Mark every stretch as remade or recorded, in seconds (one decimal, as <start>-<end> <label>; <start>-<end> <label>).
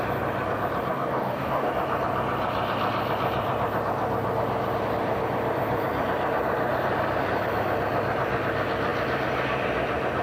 0.0-0.9 recorded; 0.9-1.7 remade; 1.7-10.2 recorded